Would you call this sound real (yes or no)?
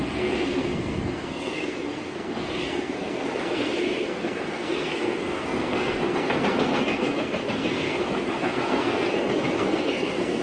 no